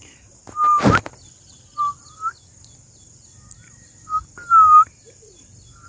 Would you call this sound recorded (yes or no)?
yes